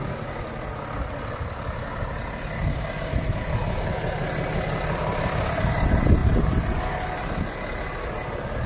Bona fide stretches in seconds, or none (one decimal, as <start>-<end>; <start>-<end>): 0.0-6.2; 6.8-8.7

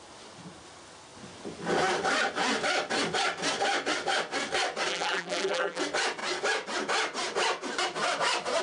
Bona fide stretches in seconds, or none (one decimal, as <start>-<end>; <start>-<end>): 0.0-4.9; 5.8-8.6

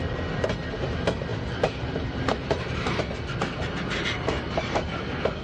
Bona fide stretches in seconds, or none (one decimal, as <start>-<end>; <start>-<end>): 0.0-5.4